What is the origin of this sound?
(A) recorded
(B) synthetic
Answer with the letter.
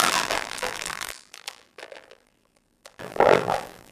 B